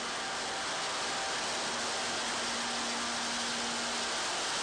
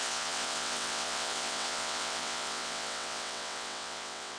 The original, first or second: first